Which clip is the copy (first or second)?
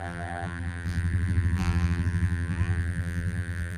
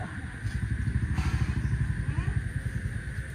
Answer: first